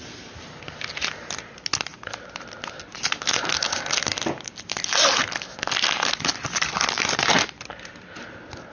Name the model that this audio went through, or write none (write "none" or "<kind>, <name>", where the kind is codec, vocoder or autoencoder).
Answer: none